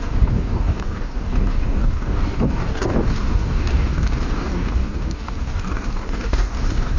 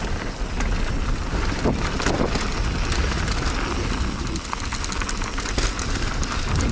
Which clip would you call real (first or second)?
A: second